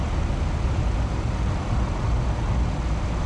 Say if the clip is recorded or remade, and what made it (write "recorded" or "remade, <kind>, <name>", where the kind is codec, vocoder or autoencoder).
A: recorded